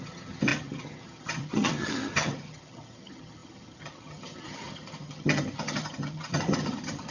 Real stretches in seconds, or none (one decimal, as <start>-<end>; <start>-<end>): none